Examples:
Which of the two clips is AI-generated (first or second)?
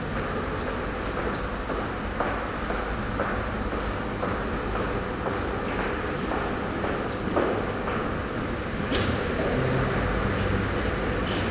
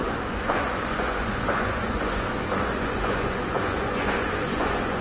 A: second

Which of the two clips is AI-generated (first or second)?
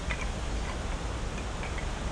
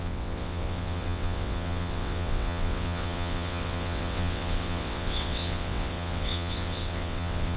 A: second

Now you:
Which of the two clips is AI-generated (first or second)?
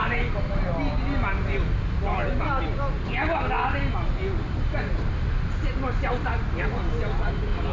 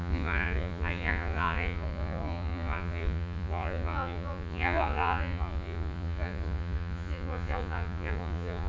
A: second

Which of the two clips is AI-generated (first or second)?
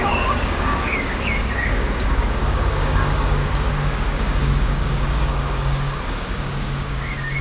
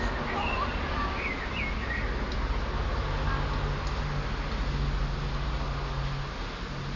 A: first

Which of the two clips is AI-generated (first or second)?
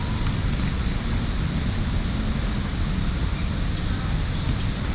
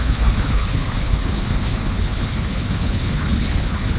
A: second